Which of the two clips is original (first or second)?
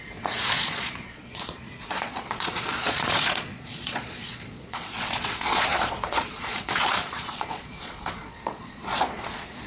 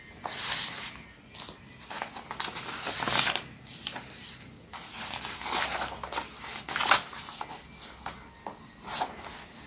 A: second